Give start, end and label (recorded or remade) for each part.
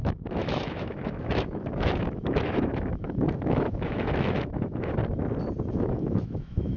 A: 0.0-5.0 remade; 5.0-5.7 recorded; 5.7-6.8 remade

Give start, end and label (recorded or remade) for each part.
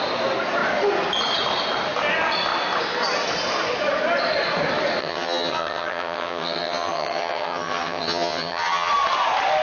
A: 0.0-5.0 recorded; 5.0-8.9 remade; 8.9-9.6 recorded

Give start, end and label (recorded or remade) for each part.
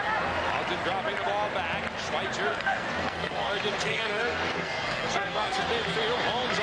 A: 0.0-2.5 recorded; 2.5-3.5 remade; 3.5-3.9 recorded; 3.9-5.6 remade; 5.6-6.6 recorded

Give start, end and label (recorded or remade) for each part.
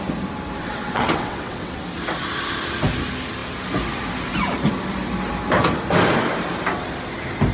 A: 0.0-0.6 recorded; 0.6-1.8 remade; 1.8-7.5 recorded